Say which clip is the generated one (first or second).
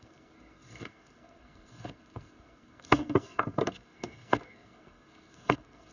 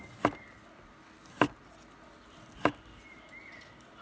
first